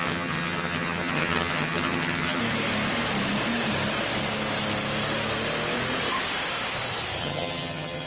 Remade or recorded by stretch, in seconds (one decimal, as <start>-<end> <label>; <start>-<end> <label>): 0.0-2.4 remade; 2.4-7.2 recorded; 7.2-8.1 remade